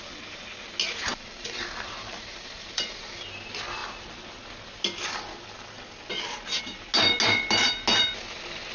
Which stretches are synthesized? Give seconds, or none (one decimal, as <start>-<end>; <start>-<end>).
1.0-3.0